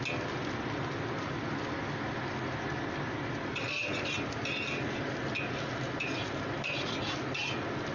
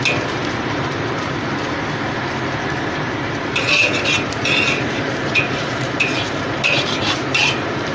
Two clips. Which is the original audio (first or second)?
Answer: first